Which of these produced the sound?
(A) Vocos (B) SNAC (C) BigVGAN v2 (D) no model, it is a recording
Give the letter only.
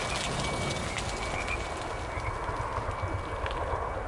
D